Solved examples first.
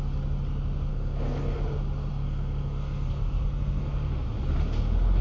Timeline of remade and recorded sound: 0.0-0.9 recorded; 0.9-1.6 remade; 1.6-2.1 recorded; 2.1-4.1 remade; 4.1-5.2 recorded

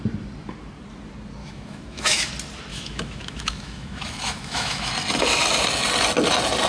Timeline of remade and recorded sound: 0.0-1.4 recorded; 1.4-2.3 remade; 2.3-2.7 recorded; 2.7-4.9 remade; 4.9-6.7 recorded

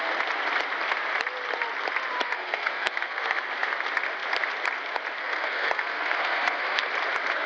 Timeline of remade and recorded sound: 0.0-2.2 recorded; 2.2-3.4 remade; 3.4-5.2 recorded; 5.2-6.9 remade; 6.9-7.5 recorded

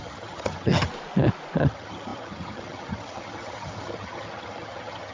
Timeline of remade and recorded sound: 0.0-0.9 remade; 0.9-1.6 recorded; 1.6-5.1 remade

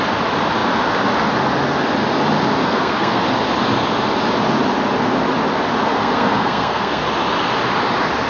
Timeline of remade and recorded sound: 0.0-2.6 recorded; 2.6-3.2 remade; 3.2-5.8 recorded; 5.8-7.0 remade; 7.0-8.3 recorded

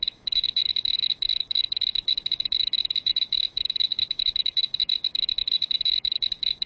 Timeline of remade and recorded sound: 0.0-6.7 remade

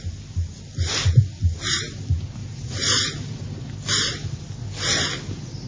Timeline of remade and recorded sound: 0.0-2.4 recorded; 2.4-3.9 remade; 3.9-5.7 recorded

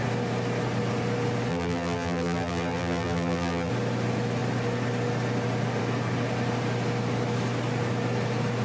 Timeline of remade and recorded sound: 0.0-1.5 recorded; 1.5-3.7 remade; 3.7-8.6 recorded